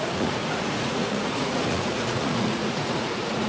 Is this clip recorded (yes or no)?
no